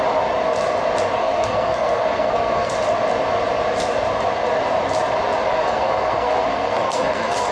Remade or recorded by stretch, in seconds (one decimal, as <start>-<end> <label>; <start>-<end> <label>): 0.0-1.2 recorded; 1.2-2.7 remade; 2.7-5.5 recorded; 5.5-7.5 remade